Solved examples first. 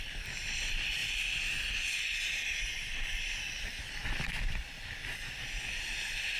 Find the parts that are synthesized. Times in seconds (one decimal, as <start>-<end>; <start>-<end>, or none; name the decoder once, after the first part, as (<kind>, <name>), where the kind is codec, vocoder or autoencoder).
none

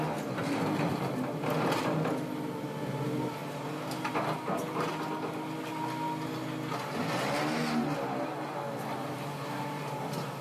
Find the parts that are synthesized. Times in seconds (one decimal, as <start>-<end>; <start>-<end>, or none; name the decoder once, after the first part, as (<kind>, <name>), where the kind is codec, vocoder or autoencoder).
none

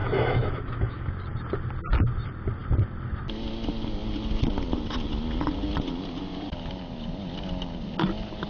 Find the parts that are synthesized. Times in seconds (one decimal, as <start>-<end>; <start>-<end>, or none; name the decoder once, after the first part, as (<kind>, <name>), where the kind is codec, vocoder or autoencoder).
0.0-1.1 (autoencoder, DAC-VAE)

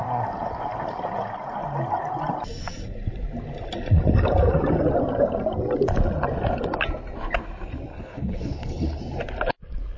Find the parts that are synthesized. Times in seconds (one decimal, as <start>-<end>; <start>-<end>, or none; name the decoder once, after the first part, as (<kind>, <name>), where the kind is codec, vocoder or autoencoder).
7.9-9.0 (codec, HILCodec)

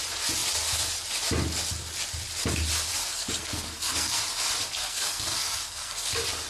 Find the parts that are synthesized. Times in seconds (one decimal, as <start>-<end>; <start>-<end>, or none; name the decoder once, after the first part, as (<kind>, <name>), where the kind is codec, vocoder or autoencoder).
2.9-4.2 (codec, SNAC); 4.8-6.1

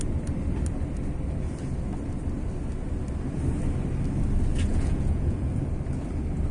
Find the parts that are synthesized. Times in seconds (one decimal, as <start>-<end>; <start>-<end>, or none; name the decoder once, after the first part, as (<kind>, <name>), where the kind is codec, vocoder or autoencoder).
4.7-5.6 (vocoder, Vocos)

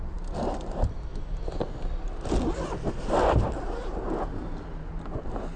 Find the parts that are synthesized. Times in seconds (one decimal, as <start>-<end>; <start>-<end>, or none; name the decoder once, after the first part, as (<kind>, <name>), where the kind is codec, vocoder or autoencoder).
none

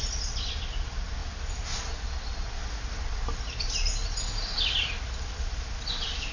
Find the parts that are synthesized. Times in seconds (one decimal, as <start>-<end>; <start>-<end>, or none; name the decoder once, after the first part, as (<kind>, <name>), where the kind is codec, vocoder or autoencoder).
none